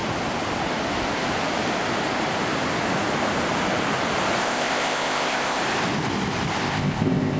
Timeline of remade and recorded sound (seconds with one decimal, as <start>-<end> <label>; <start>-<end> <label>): 0.0-4.4 recorded; 4.4-5.6 remade; 5.6-6.6 recorded; 6.6-7.4 remade